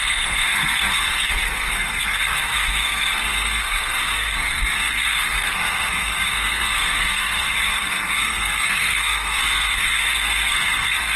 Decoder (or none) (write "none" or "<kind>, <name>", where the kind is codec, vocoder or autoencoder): codec, SNAC